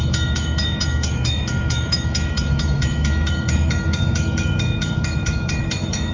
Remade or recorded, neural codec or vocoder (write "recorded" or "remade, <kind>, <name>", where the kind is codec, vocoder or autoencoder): remade, autoencoder, DAC-VAE